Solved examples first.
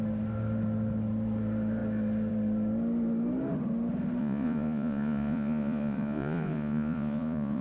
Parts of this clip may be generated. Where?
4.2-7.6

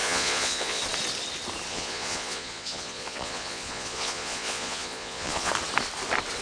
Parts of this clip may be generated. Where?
0.0-0.8; 1.7-5.5

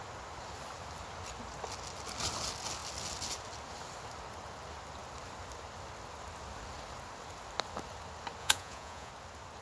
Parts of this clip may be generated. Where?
8.4-9.1

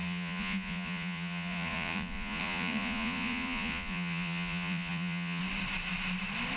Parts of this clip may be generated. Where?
0.0-5.4

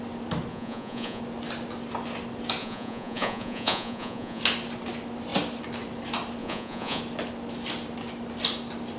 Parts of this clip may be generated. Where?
0.5-1.2; 2.6-4.4; 6.4-7.0